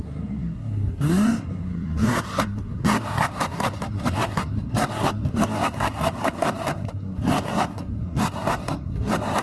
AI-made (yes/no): yes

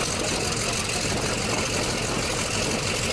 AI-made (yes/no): no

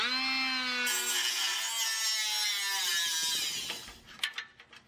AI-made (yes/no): no